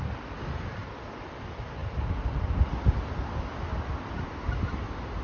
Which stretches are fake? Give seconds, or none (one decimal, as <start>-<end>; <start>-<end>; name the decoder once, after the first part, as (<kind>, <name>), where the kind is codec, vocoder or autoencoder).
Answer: none